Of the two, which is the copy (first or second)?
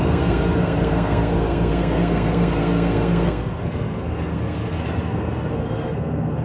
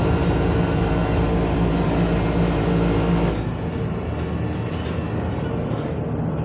first